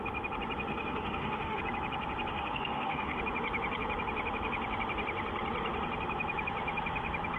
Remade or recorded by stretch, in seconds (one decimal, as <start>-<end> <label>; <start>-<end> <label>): 0.0-0.7 recorded; 0.7-1.6 remade; 1.6-2.3 recorded; 2.3-3.2 remade; 3.2-7.4 recorded